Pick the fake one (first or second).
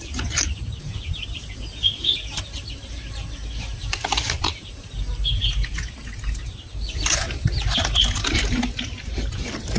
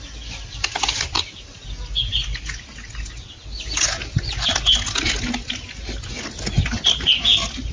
first